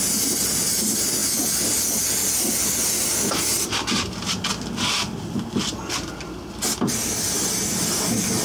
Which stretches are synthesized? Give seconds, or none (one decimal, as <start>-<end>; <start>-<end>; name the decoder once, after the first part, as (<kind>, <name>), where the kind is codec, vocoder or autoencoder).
none